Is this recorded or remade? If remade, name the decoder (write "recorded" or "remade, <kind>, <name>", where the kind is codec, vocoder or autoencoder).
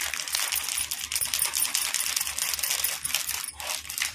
remade, vocoder, BigVGAN v2